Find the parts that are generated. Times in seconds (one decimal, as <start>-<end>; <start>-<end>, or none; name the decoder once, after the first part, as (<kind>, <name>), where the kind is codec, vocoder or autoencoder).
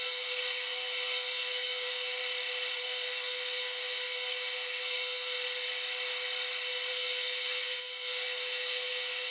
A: 0.0-2.2 (codec, SNAC); 2.8-5.4; 6.9-9.3